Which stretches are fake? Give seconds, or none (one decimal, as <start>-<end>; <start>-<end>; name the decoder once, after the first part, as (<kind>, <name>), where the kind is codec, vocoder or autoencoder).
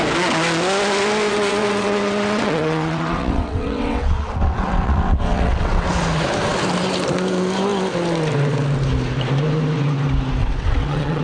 1.3-5.9 (vocoder, WaveNeXt); 10.4-11.2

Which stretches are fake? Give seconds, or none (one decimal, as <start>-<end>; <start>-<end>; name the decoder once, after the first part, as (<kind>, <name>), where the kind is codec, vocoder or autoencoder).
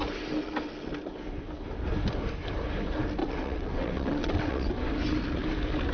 3.2-4.7 (vocoder, WaveNeXt)